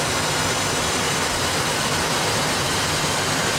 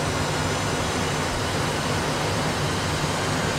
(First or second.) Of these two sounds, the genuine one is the second